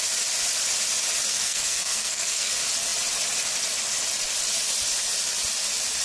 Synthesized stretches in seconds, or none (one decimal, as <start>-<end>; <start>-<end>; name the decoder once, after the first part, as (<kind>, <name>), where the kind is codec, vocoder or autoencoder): 1.3-2.5 (codec, SNAC)